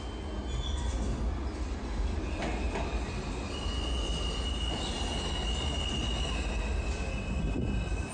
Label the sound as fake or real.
real